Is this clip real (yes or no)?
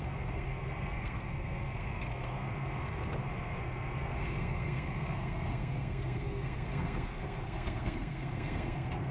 no